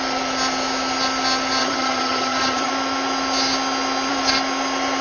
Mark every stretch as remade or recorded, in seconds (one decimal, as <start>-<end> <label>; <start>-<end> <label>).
0.0-1.6 recorded; 1.6-2.7 remade; 2.7-5.0 recorded